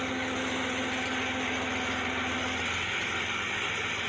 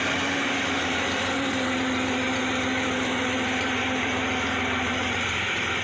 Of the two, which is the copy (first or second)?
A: second